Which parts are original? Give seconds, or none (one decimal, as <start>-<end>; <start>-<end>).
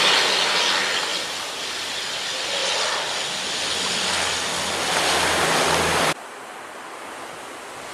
0.0-7.9